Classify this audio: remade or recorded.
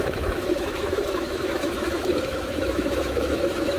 remade